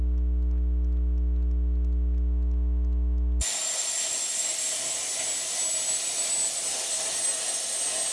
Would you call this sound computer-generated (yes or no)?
no